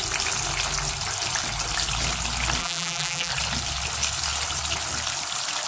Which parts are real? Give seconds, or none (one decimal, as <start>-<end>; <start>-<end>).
0.0-2.6; 3.3-5.7